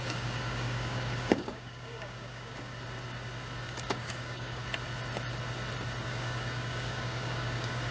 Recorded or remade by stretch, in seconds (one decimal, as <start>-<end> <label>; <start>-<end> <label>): 0.0-2.7 remade; 2.7-3.6 recorded; 3.6-4.6 remade; 4.6-6.0 recorded; 6.0-7.9 remade